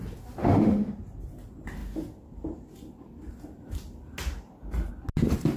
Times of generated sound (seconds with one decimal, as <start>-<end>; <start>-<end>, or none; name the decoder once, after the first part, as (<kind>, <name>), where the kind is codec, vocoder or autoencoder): 0.4-0.9 (autoencoder, DAC-VAE)